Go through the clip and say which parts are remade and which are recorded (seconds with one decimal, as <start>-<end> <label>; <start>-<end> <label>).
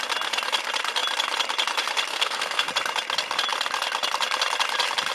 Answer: 0.0-2.1 recorded; 2.1-2.7 remade; 2.7-5.1 recorded